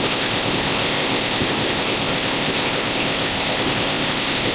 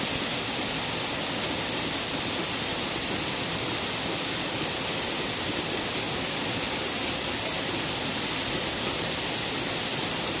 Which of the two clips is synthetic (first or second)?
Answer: first